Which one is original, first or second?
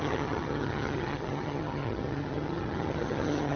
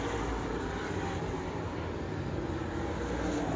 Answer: second